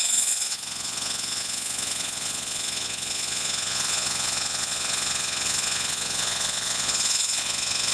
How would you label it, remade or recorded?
remade